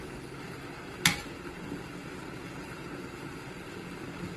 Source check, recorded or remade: recorded